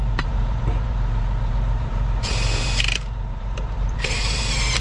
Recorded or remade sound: remade